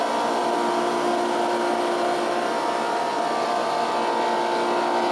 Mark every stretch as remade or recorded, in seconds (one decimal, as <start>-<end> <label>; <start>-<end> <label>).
0.0-5.1 recorded